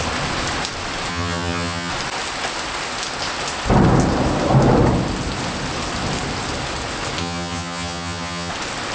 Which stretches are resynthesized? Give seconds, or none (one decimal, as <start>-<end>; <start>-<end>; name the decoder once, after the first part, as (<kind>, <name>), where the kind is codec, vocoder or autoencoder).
1.1-1.9 (vocoder, HiFi-GAN); 7.2-8.5

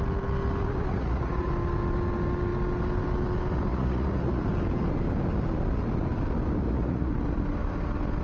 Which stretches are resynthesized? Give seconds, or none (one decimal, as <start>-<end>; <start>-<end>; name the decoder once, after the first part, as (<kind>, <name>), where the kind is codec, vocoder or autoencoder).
0.9-1.5 (vocoder, Vocos); 3.7-4.4; 6.6-7.1

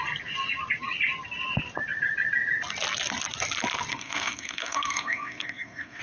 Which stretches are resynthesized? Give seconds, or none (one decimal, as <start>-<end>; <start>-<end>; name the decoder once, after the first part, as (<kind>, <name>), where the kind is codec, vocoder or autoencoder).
3.9-6.0 (codec, SNAC)

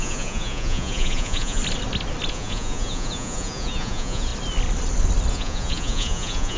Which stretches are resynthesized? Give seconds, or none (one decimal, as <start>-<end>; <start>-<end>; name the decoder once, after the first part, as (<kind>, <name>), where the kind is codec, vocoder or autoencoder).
0.0-1.6 (vocoder, Vocos); 2.3-4.3; 5.3-6.6

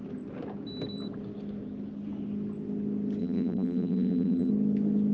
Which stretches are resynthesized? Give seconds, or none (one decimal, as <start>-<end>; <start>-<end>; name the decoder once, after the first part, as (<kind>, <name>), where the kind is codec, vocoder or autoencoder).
3.2-4.5 (vocoder, BigVGAN v2)

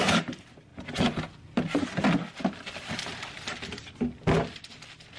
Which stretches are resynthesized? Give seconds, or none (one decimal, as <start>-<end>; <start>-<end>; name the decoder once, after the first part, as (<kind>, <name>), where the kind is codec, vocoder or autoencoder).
none

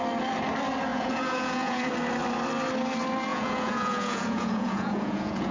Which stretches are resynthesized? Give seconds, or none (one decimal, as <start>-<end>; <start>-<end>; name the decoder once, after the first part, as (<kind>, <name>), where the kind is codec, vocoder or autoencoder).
0.9-1.9 (vocoder, Vocos); 3.3-5.5

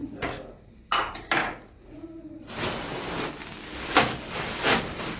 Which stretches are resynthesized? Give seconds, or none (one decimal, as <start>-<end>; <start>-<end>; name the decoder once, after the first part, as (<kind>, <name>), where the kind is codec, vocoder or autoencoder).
0.0-0.7 (vocoder, Vocos); 1.4-2.4